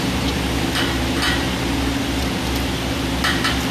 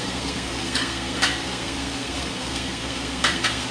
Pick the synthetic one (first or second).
second